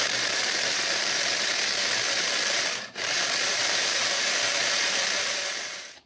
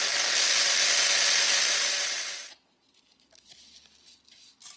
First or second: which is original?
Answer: second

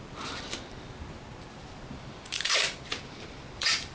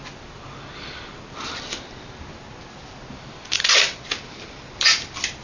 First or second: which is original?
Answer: second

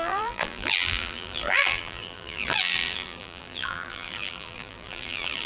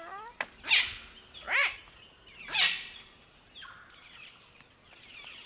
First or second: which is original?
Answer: second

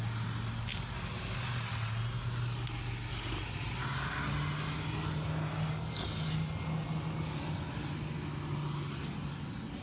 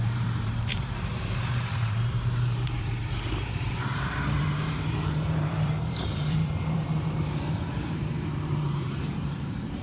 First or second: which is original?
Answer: first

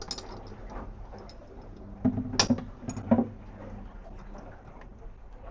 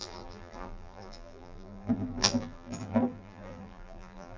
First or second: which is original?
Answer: first